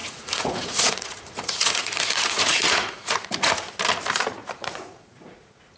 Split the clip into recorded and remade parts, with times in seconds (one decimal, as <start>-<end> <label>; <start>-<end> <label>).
0.0-3.5 remade; 3.5-4.4 recorded; 4.4-5.8 remade